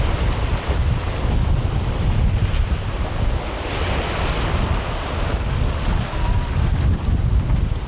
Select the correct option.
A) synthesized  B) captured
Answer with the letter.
B